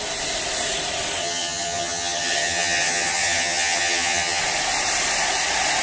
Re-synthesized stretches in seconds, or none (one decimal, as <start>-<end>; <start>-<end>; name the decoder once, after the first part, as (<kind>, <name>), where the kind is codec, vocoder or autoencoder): 1.2-4.4 (vocoder, HiFi-GAN)